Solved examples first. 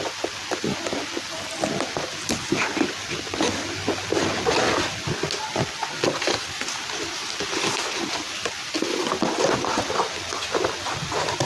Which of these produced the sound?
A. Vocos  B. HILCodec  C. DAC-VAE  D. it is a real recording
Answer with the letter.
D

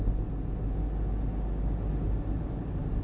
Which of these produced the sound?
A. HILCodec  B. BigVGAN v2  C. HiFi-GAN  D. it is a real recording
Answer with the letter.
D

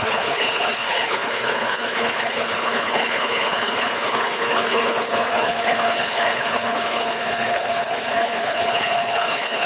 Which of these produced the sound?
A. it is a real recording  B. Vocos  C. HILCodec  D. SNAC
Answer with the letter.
C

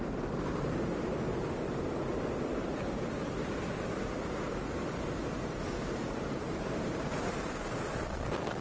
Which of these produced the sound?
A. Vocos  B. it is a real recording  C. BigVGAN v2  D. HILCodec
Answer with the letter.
B